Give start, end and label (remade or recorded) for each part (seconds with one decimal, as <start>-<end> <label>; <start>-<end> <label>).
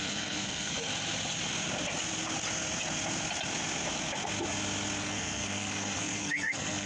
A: 0.0-0.9 remade; 0.9-5.0 recorded; 5.0-6.9 remade